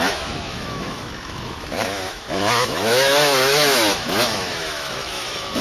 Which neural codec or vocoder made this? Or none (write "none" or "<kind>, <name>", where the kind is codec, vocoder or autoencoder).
autoencoder, DAC-VAE